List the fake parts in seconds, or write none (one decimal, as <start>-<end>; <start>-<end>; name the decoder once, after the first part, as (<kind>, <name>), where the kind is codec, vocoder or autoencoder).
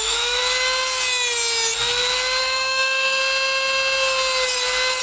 0.0-0.4 (autoencoder, DAC-VAE); 2.4-3.2